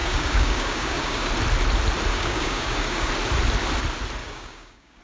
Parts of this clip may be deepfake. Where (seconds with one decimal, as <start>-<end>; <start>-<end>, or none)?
0.0-1.3; 2.1-3.1; 4.2-5.0